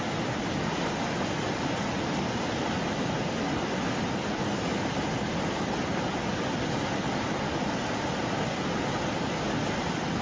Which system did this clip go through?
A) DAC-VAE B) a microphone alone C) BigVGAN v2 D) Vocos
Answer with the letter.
B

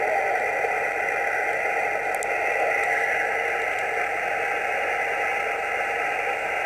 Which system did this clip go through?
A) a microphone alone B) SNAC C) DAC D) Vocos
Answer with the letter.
A